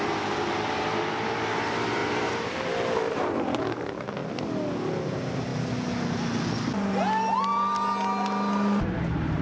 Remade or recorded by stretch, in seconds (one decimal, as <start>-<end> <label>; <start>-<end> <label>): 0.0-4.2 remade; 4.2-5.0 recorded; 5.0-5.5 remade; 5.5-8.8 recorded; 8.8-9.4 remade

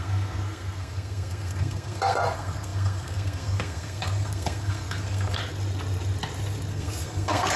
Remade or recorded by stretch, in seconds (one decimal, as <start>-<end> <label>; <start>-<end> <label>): 0.0-5.4 remade; 5.4-6.7 recorded; 6.7-7.6 remade

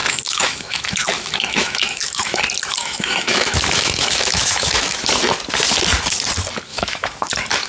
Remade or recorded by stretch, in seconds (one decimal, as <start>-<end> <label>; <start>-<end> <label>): 0.0-2.4 remade; 2.4-2.8 recorded; 2.8-5.0 remade; 5.0-6.7 recorded; 6.7-7.3 remade; 7.3-7.7 recorded